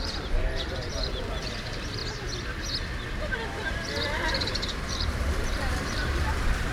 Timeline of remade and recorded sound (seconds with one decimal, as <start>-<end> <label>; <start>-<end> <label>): 0.0-2.0 remade; 2.0-3.1 recorded; 3.1-6.7 remade